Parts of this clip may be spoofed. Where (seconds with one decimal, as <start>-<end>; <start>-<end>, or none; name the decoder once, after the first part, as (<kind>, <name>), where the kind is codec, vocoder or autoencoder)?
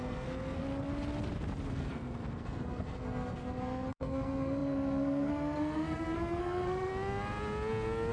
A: 0.0-0.6 (codec, SNAC); 1.7-6.9